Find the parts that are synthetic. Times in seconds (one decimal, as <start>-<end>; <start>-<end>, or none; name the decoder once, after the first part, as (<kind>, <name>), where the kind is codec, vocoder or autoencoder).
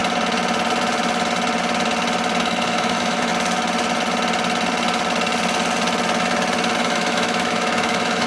2.4-3.3 (autoencoder, DAC-VAE); 6.8-8.3